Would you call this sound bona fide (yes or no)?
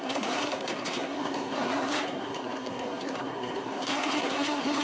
no